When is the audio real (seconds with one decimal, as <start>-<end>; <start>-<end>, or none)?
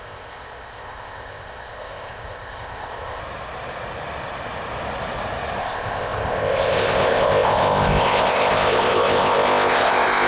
3.2-5.6